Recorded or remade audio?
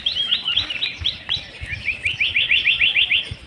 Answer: remade